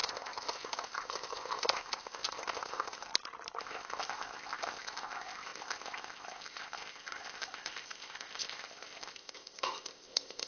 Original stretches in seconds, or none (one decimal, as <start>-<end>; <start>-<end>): 3.1-3.6